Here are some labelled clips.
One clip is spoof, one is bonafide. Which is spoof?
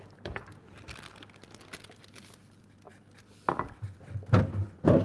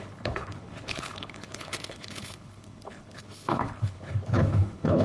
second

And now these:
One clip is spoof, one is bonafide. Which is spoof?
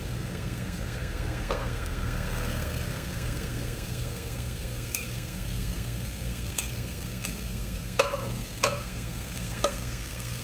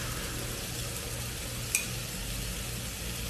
first